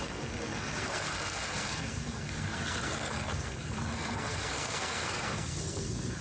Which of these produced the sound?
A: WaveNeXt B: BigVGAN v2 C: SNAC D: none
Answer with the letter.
C